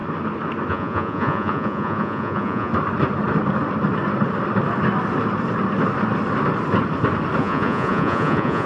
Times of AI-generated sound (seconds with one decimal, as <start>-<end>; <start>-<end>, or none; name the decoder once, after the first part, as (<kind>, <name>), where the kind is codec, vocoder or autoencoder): 0.7-2.7 (vocoder, Vocos); 7.4-8.7

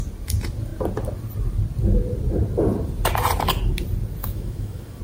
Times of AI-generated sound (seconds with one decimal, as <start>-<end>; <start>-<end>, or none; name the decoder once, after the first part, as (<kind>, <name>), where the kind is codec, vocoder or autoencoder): 4.2-5.0 (autoencoder, DAC-VAE)

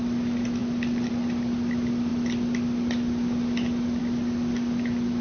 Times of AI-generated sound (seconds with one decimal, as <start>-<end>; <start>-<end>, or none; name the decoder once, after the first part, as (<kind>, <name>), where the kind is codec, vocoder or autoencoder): none

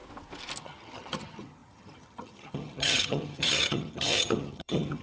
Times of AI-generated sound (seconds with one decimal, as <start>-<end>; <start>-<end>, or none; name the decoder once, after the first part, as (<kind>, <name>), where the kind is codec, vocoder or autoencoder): 0.6-5.0 (vocoder, HiFi-GAN)

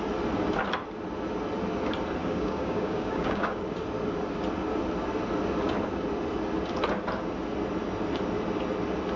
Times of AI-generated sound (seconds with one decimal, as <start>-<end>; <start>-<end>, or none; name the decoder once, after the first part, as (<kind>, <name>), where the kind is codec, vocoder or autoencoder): 2.2-3.6 (codec, DAC)

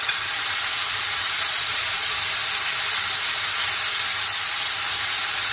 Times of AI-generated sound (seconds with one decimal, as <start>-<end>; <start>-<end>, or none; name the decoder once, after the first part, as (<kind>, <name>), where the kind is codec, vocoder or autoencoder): 0.0-0.4 (vocoder, Vocos); 1.5-2.0

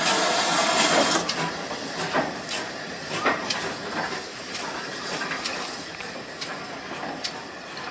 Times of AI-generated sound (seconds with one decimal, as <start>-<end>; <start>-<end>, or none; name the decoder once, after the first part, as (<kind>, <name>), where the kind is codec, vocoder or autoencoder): none